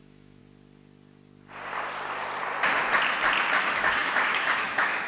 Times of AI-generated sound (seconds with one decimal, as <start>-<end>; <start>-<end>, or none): 0.0-0.4; 3.5-5.1